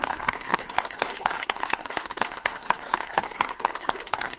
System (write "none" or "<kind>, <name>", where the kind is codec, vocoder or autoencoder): codec, SNAC